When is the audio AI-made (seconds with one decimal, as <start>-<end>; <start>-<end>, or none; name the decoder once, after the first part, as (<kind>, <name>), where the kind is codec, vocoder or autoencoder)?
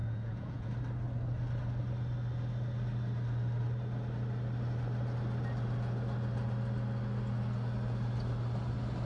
0.0-0.7 (vocoder, Vocos)